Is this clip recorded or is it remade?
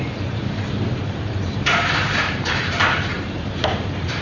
remade